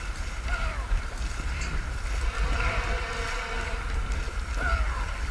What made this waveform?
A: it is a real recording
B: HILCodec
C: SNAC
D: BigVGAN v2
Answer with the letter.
D